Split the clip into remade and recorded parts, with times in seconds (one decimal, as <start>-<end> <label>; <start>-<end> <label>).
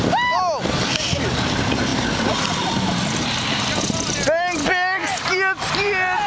0.0-6.3 recorded